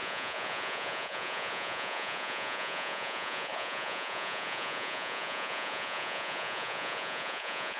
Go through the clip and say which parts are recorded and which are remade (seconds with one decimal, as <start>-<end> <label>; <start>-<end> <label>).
0.0-7.8 remade